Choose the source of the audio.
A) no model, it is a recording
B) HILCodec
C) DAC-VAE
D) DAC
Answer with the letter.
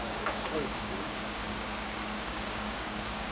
D